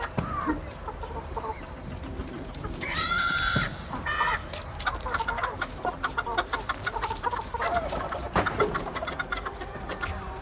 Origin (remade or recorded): remade